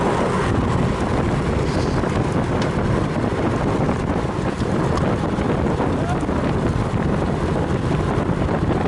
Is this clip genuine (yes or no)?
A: yes